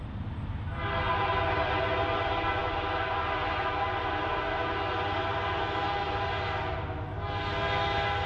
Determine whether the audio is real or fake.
real